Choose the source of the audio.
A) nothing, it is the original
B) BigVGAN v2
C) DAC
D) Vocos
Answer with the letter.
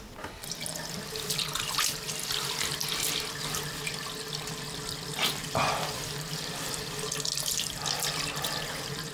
A